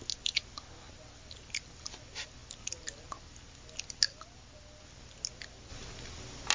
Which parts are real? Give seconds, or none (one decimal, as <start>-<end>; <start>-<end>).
0.0-6.5

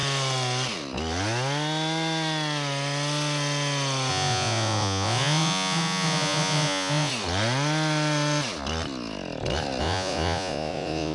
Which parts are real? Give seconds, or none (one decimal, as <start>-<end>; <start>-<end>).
0.0-4.1; 7.1-9.8

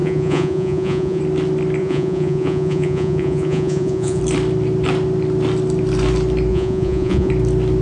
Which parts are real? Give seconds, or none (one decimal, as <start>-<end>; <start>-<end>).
1.2-1.8; 4.2-6.5; 7.3-7.8

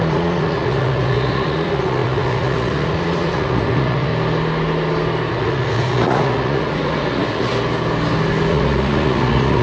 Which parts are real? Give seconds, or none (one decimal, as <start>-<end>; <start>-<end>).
4.1-5.3; 7.5-8.5

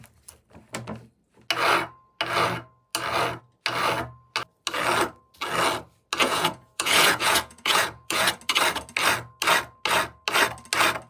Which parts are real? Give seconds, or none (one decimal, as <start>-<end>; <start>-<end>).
0.0-6.2; 8.3-11.1

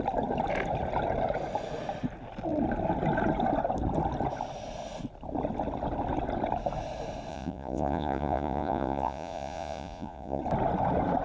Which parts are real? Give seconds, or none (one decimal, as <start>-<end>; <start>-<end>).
0.0-7.3; 10.4-11.2

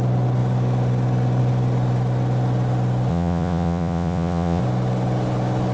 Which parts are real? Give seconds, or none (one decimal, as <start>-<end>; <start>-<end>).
0.0-3.1; 4.6-5.7

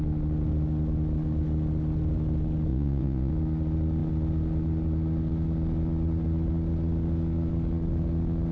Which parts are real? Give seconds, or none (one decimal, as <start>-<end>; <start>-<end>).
0.0-2.7; 3.3-8.5